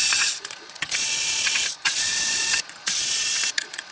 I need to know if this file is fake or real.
fake